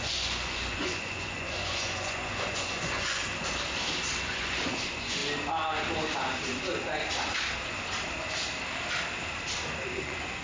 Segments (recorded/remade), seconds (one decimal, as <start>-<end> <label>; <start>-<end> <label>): 0.0-3.2 remade; 3.2-4.2 recorded; 4.2-5.2 remade; 5.2-10.0 recorded; 10.0-10.4 remade